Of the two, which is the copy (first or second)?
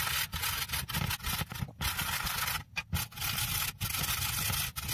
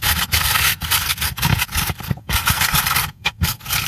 second